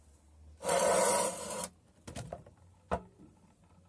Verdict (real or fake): real